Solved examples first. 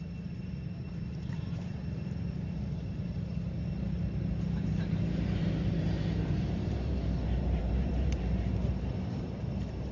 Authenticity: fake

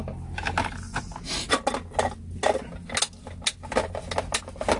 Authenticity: real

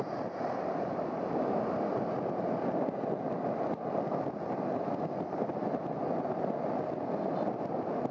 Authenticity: real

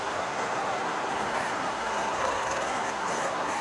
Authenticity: fake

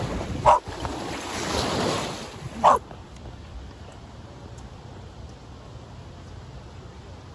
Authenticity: real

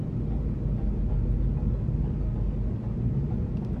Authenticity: real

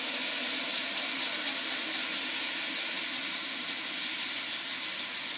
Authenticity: real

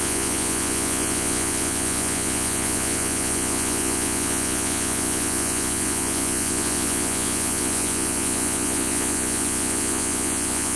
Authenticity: fake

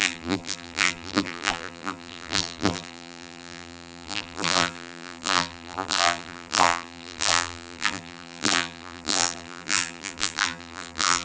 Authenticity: fake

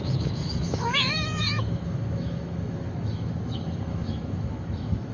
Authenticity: fake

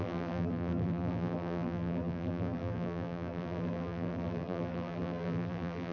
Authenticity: fake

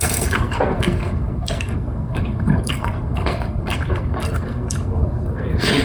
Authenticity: fake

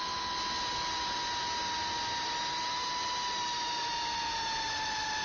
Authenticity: real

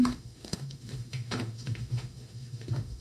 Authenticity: fake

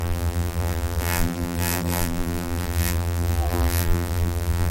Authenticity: fake